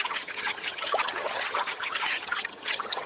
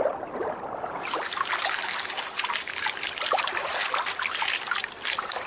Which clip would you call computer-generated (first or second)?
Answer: first